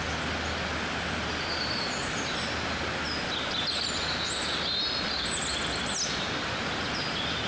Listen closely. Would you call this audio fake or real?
real